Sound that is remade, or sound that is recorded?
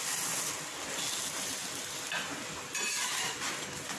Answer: recorded